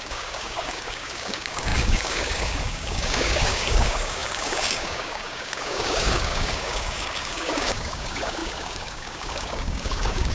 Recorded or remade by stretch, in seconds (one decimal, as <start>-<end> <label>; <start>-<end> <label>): 0.0-10.3 remade